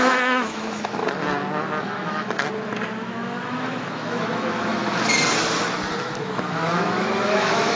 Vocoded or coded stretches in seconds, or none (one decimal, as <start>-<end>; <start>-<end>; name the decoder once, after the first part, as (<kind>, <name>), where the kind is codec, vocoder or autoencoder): 0.0-1.0 (autoencoder, DAC-VAE); 1.8-2.4; 3.0-4.8; 6.0-7.8

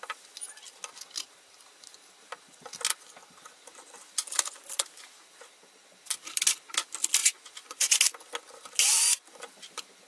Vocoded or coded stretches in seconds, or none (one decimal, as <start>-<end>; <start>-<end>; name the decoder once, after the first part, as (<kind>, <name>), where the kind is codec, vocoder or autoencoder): 7.2-7.8 (vocoder, Vocos)

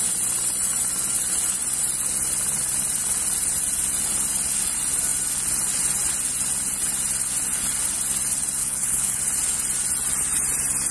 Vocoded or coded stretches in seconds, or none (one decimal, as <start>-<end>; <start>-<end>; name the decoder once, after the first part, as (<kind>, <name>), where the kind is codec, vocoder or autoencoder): 8.6-9.2 (codec, HILCodec)

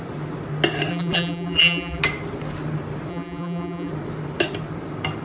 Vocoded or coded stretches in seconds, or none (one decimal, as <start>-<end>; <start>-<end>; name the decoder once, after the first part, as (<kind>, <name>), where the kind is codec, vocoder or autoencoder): 0.9-2.0 (vocoder, BigVGAN v2); 3.1-3.9